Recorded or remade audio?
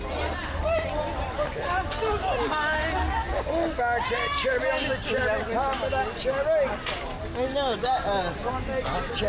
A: recorded